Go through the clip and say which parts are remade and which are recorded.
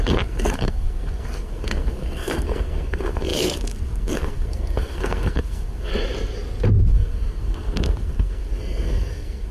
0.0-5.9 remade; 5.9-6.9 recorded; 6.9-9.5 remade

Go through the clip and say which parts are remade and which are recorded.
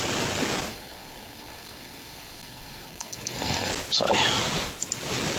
0.0-0.7 recorded; 0.7-3.7 remade; 3.7-5.4 recorded